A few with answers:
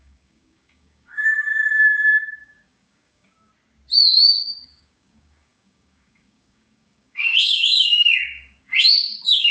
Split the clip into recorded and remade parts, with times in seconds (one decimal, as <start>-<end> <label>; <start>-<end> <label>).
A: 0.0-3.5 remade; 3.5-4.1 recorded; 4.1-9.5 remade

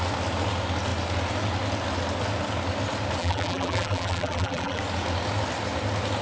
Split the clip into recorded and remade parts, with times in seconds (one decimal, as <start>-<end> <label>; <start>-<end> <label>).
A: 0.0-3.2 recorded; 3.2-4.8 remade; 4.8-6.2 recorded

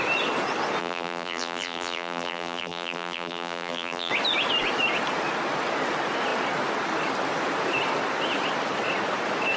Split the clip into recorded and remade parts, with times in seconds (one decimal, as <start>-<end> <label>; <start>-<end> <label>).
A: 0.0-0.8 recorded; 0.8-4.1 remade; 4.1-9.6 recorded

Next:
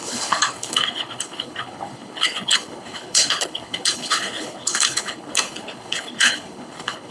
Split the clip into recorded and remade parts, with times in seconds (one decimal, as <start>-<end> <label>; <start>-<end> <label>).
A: 0.0-7.1 remade